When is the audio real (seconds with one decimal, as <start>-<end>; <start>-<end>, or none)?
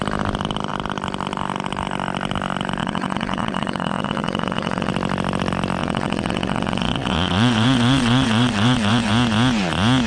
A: 0.0-2.8; 4.9-5.8; 9.1-10.1